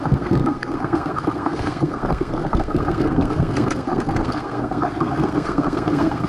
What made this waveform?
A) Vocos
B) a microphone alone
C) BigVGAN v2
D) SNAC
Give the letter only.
D